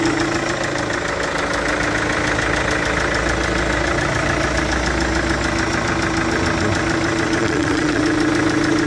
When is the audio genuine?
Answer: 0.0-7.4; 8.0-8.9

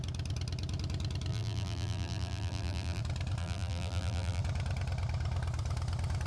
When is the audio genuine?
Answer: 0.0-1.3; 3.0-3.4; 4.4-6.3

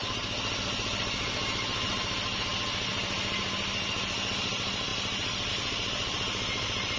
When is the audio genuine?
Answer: 0.0-7.0